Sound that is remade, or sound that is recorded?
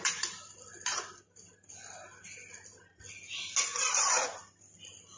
recorded